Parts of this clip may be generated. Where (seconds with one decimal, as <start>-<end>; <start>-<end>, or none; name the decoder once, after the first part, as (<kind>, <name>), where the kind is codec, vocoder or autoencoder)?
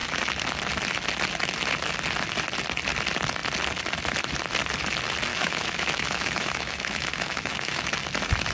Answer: 5.3-7.9 (autoencoder, DAC-VAE)